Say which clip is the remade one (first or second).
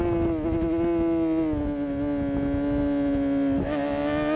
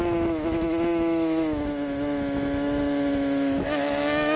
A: second